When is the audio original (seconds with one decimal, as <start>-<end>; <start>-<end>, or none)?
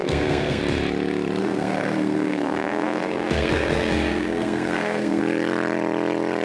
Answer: 0.6-1.4; 5.2-6.4